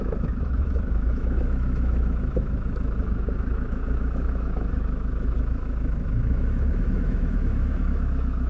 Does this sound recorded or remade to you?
remade